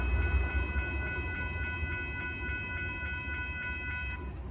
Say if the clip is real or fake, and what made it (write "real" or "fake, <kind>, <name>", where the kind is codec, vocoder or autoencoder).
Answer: real